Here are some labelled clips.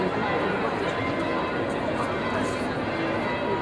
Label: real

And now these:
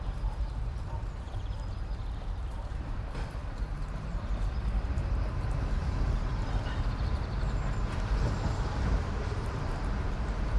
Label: fake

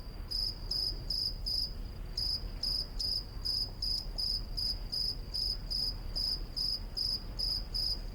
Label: real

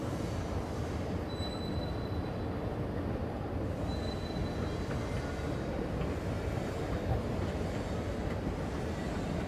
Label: real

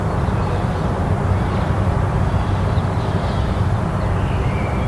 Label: real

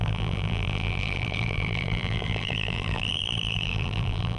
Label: fake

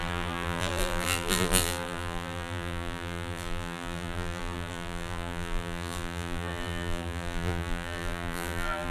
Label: fake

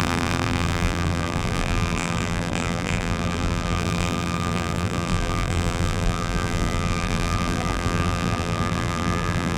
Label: fake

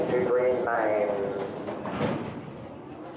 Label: fake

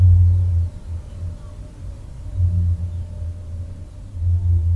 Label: real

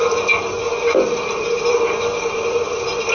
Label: fake